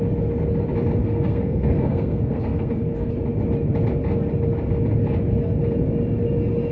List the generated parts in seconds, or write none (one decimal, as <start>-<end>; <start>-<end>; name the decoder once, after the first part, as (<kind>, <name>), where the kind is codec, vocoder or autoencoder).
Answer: 1.0-3.1 (codec, SNAC)